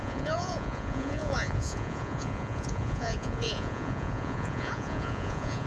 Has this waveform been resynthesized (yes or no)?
yes